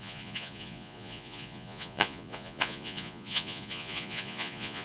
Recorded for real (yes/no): no